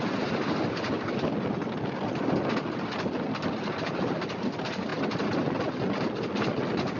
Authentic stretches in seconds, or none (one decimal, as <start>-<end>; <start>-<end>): 0.0-7.0